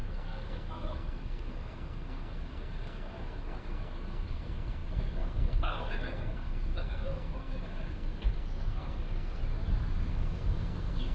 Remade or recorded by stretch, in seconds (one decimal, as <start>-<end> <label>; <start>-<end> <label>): 0.0-9.4 remade; 9.4-10.1 recorded; 10.1-11.1 remade